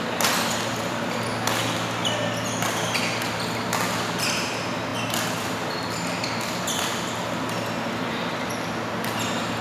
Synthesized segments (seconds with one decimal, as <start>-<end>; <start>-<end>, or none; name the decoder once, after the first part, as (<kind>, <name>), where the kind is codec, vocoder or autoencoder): none